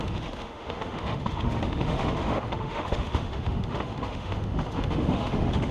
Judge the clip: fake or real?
fake